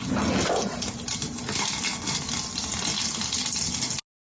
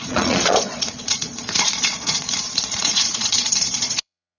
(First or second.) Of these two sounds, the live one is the first